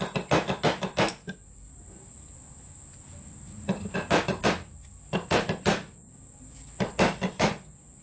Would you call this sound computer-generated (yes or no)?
no